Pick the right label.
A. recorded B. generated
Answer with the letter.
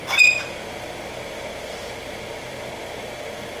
A